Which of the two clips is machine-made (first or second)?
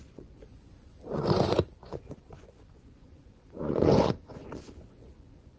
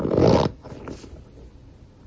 first